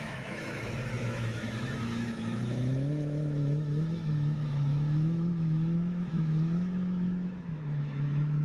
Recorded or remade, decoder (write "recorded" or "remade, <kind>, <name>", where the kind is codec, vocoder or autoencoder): remade, autoencoder, DAC-VAE